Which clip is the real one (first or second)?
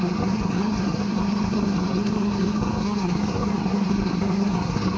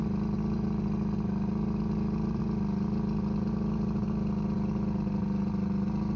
second